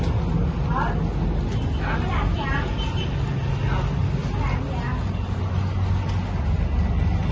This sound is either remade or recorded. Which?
recorded